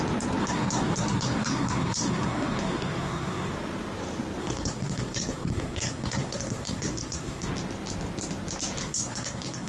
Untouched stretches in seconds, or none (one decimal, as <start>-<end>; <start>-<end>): 0.0-0.4; 3.5-4.4; 7.5-8.8